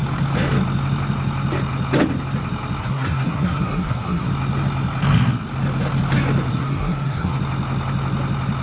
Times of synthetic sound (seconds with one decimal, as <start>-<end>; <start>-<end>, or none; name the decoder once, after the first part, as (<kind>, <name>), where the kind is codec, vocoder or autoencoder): 2.8-4.3 (codec, SNAC); 6.5-7.4